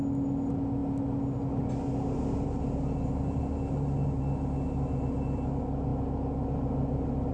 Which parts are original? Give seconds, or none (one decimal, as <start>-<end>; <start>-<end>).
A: 0.0-7.3